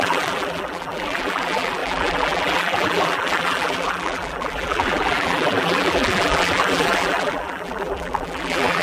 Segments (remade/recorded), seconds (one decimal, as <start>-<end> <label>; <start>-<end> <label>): 0.0-8.8 remade